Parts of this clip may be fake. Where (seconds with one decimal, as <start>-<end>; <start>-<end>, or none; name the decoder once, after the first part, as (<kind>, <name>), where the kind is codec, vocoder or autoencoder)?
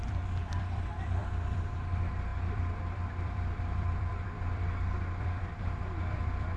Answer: 0.0-6.6 (vocoder, BigVGAN v2)